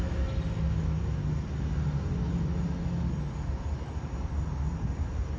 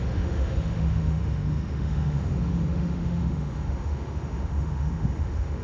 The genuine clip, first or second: first